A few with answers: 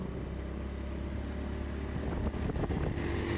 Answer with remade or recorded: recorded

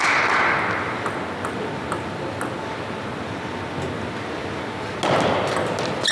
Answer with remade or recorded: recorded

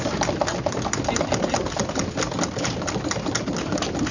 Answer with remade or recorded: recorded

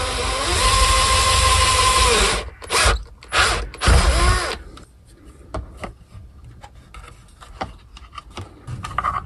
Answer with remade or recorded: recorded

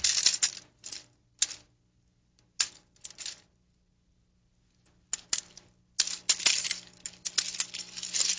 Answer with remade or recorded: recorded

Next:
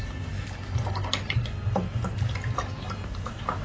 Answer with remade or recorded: recorded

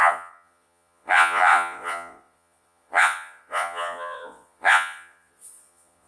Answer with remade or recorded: remade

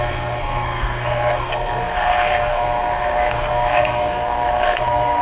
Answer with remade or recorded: remade